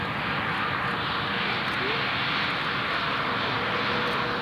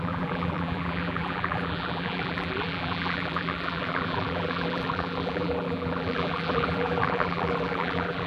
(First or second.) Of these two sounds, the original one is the first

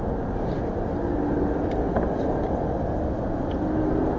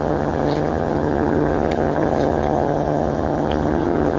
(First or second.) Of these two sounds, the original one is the first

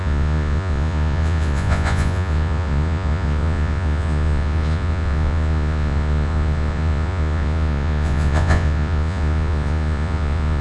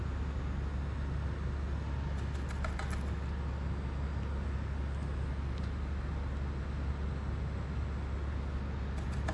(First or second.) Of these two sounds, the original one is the second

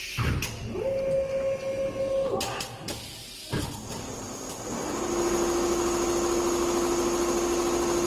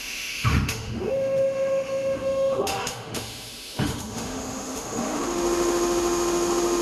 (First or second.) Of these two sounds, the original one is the first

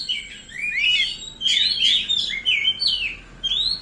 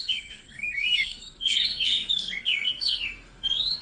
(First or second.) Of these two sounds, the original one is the first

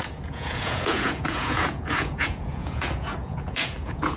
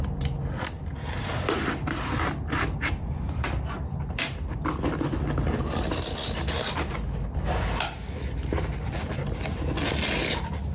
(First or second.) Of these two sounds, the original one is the second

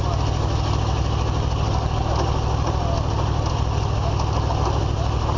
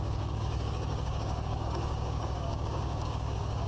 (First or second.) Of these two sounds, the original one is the first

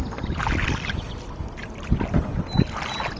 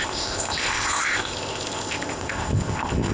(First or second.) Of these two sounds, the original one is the first